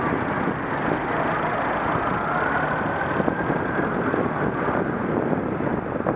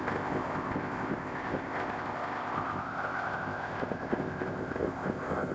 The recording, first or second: first